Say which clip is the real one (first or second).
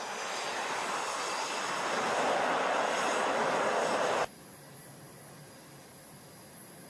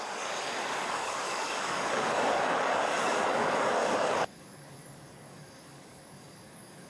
first